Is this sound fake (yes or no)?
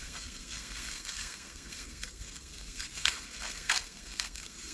yes